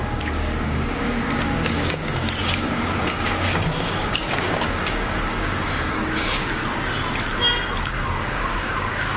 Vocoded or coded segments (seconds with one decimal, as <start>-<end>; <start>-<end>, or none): 0.0-6.6; 7.8-9.2